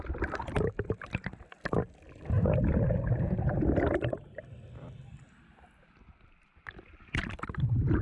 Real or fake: real